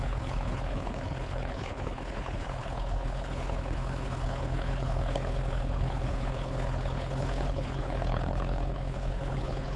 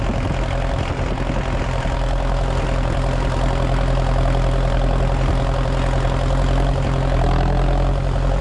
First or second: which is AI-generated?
first